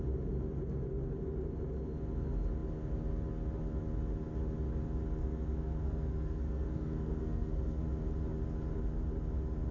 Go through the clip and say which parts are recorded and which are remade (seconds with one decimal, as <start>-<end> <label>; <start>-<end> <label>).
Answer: 0.0-5.2 recorded; 5.2-7.8 remade; 7.8-9.7 recorded

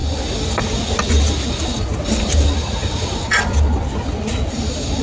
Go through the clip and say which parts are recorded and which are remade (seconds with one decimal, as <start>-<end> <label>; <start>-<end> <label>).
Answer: 0.0-5.0 recorded

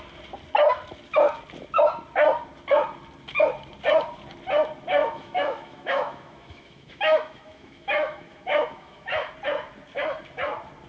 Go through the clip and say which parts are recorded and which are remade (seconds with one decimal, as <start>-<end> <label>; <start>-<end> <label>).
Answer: 0.0-5.0 recorded; 5.0-9.3 remade; 9.3-10.9 recorded

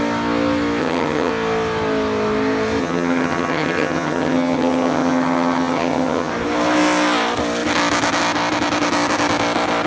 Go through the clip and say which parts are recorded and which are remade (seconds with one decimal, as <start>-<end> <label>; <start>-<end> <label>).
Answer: 0.0-0.8 recorded; 0.8-1.3 remade; 1.3-2.8 recorded; 2.8-6.3 remade; 6.3-9.9 recorded

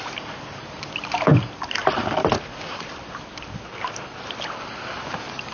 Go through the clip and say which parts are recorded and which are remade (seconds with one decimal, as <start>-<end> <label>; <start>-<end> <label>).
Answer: 0.0-5.5 recorded

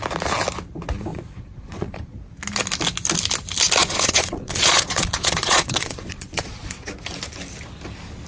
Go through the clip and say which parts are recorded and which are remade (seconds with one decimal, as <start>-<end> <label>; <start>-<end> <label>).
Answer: 0.0-1.1 recorded; 1.1-2.3 remade; 2.3-3.8 recorded; 3.8-6.9 remade; 6.9-8.3 recorded

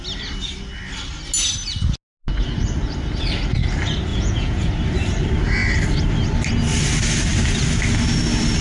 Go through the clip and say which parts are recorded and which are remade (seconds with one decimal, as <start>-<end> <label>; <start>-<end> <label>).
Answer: 0.0-4.1 recorded; 4.1-4.7 remade; 4.7-8.6 recorded